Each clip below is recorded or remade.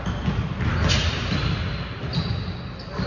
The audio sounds recorded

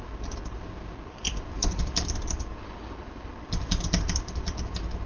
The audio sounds recorded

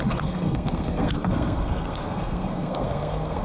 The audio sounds remade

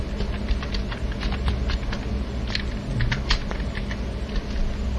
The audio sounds recorded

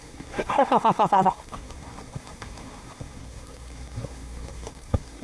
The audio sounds remade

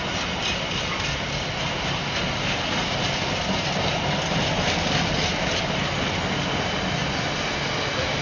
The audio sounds recorded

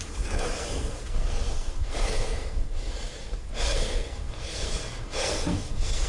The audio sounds remade